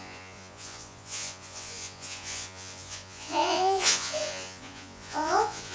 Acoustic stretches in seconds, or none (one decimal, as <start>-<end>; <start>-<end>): none